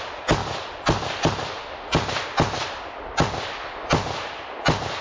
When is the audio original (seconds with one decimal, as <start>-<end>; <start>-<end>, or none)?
0.0-5.0